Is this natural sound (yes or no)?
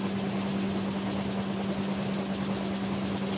yes